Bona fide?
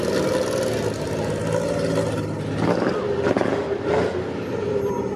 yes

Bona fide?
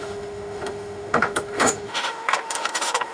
no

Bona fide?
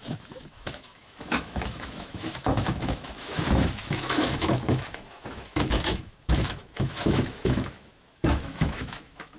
no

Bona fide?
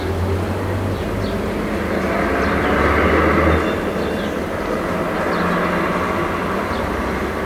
yes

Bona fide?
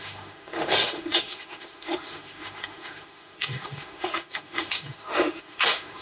no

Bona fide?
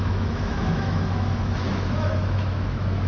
no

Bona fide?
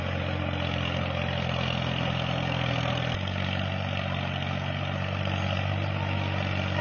yes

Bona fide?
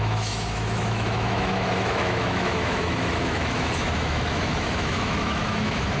no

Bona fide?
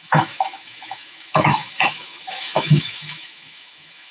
no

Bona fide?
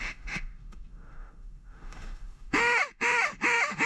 no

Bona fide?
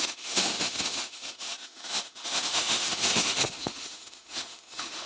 no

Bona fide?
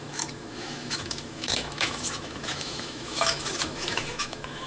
no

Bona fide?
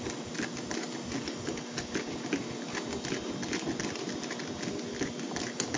yes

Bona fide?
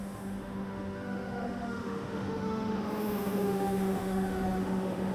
no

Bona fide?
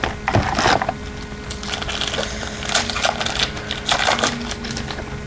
yes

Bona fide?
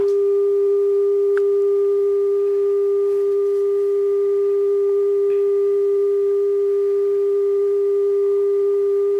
yes